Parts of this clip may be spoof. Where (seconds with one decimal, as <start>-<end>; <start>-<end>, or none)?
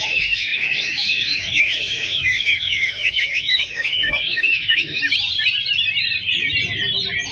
0.0-5.0